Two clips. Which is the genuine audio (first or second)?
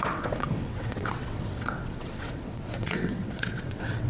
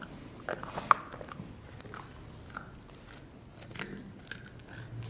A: second